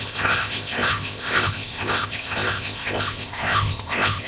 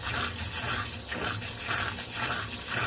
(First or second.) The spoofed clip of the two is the first